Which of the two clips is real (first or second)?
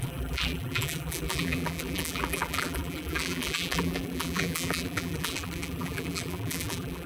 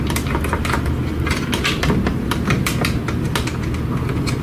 second